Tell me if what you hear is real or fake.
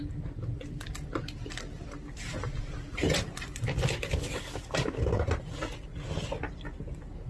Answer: real